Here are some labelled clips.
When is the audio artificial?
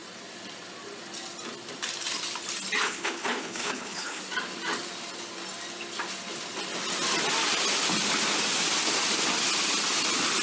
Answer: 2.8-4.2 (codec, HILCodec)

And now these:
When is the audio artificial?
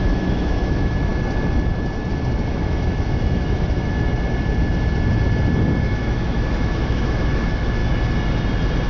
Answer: 0.0-1.1 (autoencoder, DAC-VAE); 2.5-4.1; 5.8-7.8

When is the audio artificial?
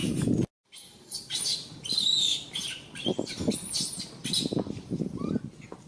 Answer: 4.2-5.2 (vocoder, BigVGAN v2)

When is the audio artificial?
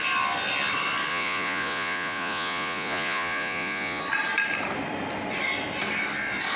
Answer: 1.1-4.0 (vocoder, Vocos)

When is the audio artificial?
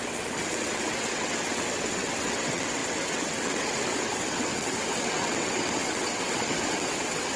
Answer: 0.0-7.4 (vocoder, WaveNeXt)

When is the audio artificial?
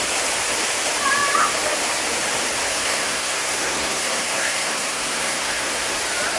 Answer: 2.7-6.0 (codec, SNAC)